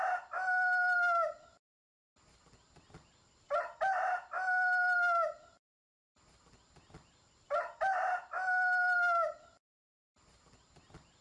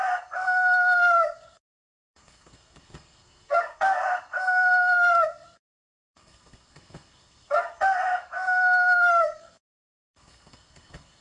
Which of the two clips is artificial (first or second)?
second